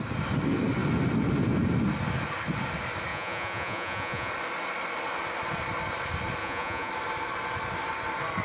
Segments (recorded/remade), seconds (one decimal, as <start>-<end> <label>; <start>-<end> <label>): 0.0-3.1 recorded; 3.1-4.3 remade; 4.3-6.4 recorded; 6.4-6.9 remade; 6.9-8.4 recorded